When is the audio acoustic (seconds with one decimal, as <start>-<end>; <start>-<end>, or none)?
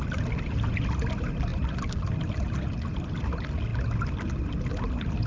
0.0-5.3